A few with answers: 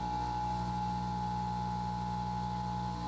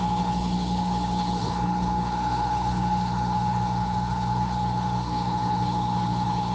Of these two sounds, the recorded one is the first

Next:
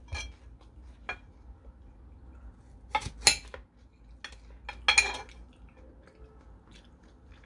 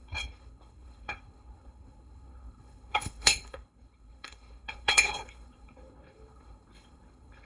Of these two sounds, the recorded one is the first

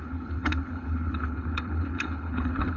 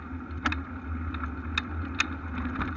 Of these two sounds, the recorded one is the second